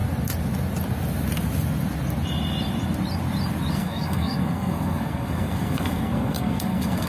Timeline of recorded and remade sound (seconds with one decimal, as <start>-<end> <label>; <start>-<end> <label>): 0.0-3.7 recorded; 3.7-7.1 remade

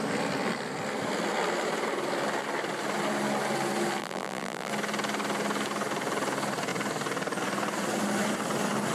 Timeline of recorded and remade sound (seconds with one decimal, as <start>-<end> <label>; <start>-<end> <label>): 0.0-4.0 recorded; 4.0-4.7 remade; 4.7-8.9 recorded

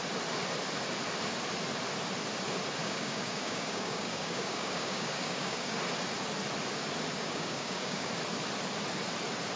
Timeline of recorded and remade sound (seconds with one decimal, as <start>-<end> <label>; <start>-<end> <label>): 0.0-2.8 recorded; 2.8-5.8 remade; 5.8-7.2 recorded; 7.2-8.1 remade; 8.1-9.6 recorded